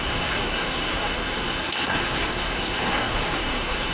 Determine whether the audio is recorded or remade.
remade